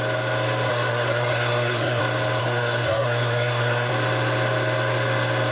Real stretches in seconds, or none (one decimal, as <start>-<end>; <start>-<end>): 0.0-0.7; 2.0-2.4; 3.9-5.5

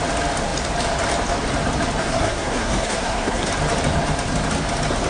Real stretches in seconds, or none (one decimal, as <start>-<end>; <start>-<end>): 0.0-2.0; 3.5-5.1